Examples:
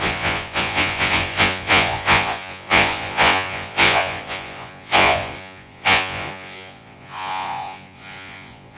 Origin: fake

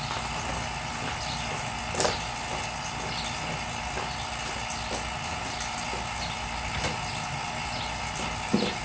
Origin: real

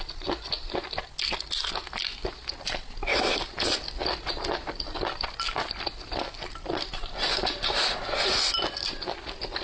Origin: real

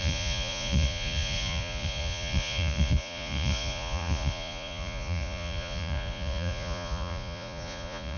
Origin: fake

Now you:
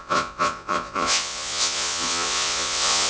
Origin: fake